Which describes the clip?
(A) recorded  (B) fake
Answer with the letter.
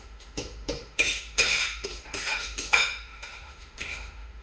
B